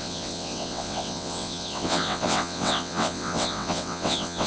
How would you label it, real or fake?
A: fake